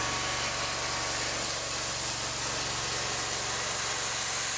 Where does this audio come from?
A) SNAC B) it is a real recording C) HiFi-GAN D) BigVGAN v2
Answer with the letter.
B